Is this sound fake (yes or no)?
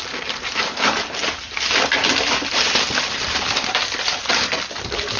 no